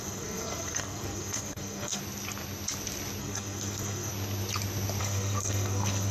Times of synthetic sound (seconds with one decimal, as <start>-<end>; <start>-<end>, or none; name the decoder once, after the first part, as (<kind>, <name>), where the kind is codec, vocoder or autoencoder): 0.0-2.0 (codec, SNAC); 3.2-4.1; 5.0-6.1